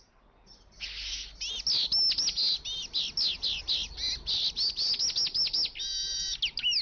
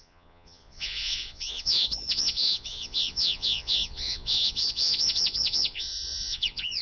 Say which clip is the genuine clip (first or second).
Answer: first